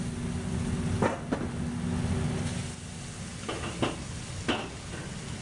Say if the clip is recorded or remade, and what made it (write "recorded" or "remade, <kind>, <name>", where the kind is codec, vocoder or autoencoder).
recorded